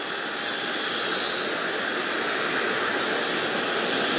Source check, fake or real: real